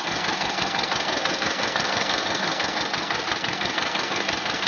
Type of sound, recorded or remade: remade